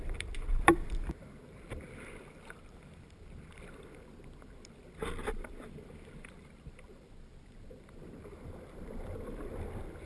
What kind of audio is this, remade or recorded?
remade